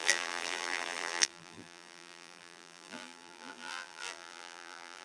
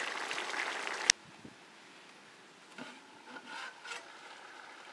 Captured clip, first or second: second